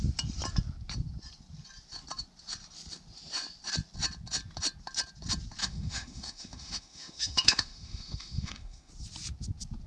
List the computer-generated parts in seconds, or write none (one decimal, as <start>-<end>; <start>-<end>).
5.6-8.9